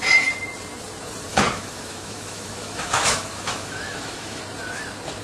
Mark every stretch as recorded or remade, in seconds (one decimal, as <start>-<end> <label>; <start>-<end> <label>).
0.0-1.3 recorded; 1.3-4.4 remade; 4.4-5.2 recorded